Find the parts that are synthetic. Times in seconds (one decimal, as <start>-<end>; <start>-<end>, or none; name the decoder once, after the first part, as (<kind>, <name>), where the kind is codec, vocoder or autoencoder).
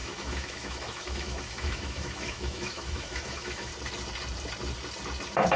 0.0-3.7 (autoencoder, DAC-VAE)